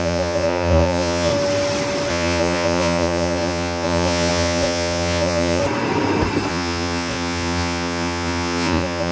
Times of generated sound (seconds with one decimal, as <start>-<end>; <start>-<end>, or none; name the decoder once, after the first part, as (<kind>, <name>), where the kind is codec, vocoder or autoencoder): 0.0-1.3 (vocoder, Vocos); 2.1-5.6; 6.5-9.1